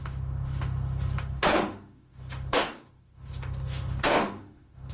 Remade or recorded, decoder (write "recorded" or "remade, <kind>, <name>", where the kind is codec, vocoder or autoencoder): remade, autoencoder, DAC-VAE